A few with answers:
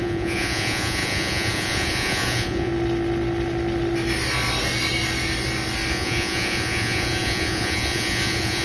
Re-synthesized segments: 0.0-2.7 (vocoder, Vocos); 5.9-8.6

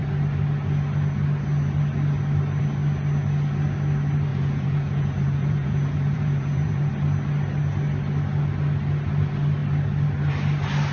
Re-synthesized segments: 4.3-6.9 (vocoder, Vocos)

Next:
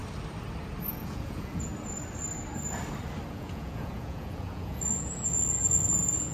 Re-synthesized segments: 0.8-1.7 (vocoder, Vocos); 3.3-6.3

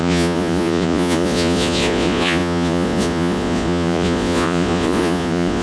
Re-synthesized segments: 0.0-5.6 (vocoder, Vocos)

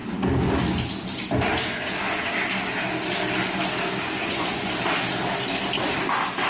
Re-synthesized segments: 4.2-4.7 (vocoder, Vocos)

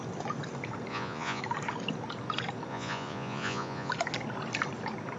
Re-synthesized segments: 0.9-1.4 (vocoder, Vocos); 2.7-3.9